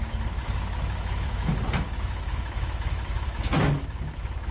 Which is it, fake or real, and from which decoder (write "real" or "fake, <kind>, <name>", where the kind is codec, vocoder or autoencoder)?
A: fake, autoencoder, DAC-VAE